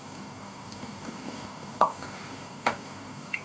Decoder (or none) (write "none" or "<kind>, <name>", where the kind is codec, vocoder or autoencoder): codec, DAC